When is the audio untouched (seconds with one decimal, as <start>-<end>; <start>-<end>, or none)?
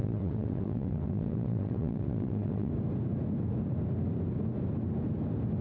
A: 2.7-5.6